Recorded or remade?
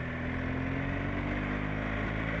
recorded